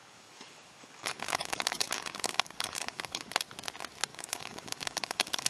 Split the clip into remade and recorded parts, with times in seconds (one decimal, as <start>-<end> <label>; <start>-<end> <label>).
0.0-3.3 remade; 3.3-4.1 recorded; 4.1-5.5 remade